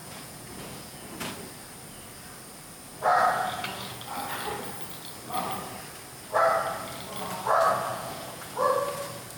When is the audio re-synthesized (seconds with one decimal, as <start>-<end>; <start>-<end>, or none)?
0.0-1.3; 3.1-4.0; 7.9-8.8